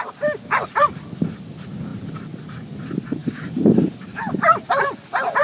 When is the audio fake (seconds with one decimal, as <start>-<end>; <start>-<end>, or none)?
3.2-4.7

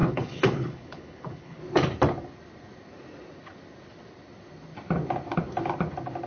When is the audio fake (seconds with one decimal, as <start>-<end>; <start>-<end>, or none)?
0.0-1.6

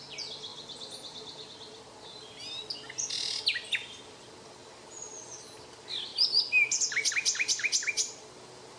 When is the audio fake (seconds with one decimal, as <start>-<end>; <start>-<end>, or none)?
none

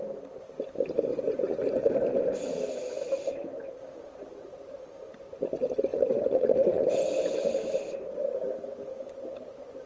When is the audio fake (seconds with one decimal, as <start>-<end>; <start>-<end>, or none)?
1.1-1.9; 5.9-6.8

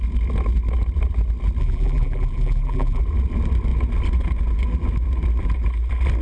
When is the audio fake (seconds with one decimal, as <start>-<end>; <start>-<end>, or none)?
1.6-3.0